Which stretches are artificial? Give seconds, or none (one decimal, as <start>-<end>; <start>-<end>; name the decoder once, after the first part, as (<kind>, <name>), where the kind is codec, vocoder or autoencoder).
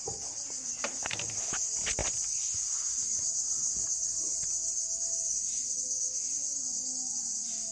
none